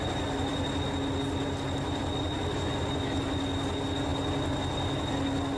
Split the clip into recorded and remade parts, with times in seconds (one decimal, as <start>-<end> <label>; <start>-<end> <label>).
0.0-5.6 recorded